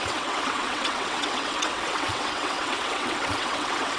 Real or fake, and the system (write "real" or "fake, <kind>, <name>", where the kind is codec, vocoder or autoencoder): fake, vocoder, WaveNeXt